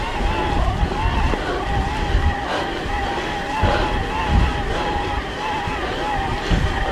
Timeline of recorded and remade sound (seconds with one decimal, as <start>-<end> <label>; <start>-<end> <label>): 0.0-4.5 recorded; 4.5-5.4 remade; 5.4-6.9 recorded